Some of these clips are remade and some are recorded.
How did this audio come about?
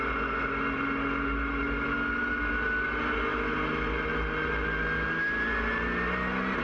recorded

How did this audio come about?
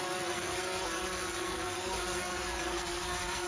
remade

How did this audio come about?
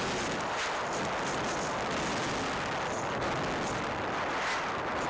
recorded